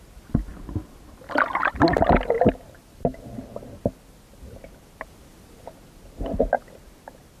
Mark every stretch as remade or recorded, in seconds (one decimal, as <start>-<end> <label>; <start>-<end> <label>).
0.0-7.4 recorded